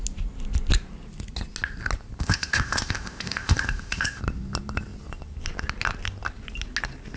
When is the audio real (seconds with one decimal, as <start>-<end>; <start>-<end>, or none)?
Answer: 0.0-2.2; 4.2-7.2